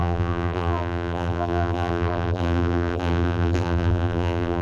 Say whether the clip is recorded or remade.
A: remade